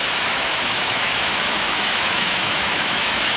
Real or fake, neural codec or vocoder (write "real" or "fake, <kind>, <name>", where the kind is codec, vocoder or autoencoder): fake, autoencoder, DAC-VAE